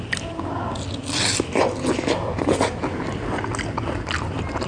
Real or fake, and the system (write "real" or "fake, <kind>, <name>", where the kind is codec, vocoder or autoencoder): real